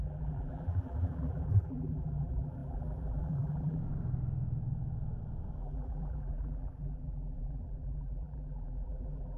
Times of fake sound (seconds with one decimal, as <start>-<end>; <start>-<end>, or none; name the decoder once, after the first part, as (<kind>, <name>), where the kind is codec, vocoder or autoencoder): 0.0-3.8 (vocoder, BigVGAN v2); 5.6-9.4